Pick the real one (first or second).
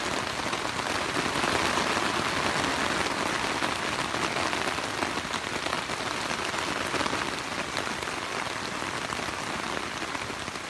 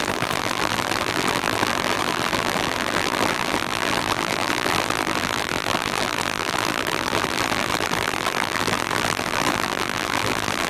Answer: first